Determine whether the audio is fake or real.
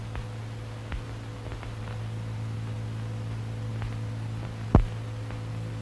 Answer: real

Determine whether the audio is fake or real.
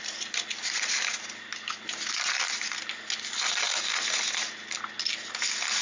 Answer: real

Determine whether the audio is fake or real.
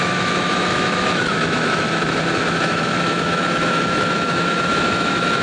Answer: fake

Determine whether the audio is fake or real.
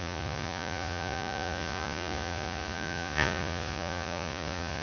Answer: fake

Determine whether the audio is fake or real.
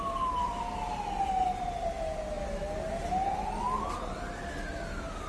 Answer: real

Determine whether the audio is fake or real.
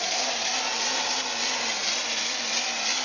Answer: real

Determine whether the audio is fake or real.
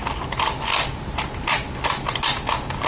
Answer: real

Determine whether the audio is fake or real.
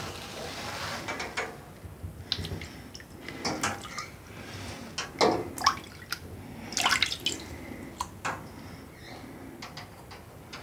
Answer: real